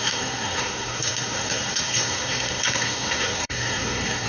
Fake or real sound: fake